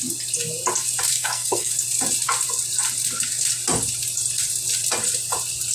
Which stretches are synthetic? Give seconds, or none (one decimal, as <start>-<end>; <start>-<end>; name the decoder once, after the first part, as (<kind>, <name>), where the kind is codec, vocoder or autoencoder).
1.1-1.7 (codec, SNAC)